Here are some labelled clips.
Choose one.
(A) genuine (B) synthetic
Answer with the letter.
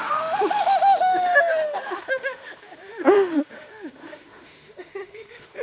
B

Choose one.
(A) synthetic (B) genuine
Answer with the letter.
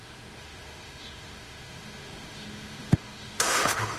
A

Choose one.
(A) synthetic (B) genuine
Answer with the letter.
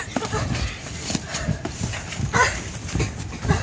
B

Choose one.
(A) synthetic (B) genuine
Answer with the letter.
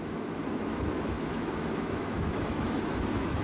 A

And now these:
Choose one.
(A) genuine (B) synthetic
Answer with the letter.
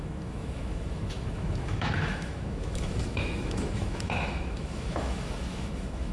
B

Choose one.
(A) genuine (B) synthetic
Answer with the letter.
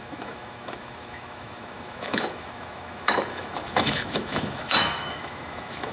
B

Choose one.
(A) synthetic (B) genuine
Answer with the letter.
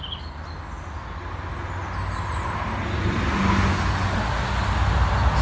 B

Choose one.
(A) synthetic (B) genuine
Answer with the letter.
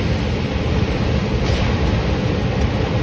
B